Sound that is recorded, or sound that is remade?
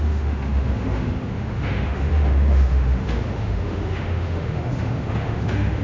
remade